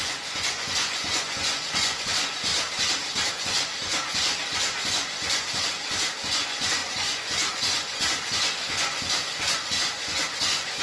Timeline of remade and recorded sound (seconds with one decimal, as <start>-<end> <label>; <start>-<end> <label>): 0.0-2.5 remade; 2.5-3.3 recorded; 3.3-10.8 remade